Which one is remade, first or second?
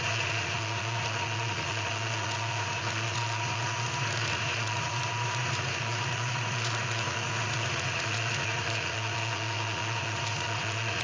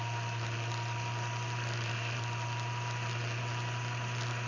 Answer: first